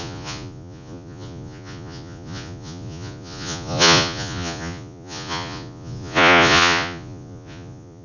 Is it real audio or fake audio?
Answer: fake